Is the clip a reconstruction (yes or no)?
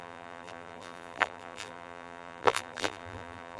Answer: yes